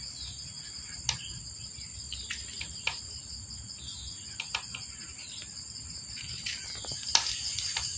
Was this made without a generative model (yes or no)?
yes